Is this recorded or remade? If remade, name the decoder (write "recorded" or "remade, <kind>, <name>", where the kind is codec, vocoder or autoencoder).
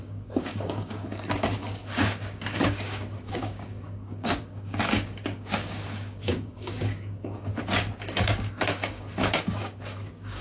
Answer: remade, codec, DAC